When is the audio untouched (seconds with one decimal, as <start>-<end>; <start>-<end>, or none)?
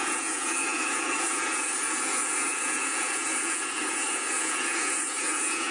none